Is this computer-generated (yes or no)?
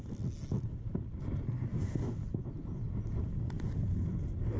no